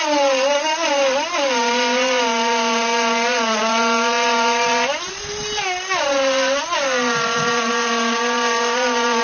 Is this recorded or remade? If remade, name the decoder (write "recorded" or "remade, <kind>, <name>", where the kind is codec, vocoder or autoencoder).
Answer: recorded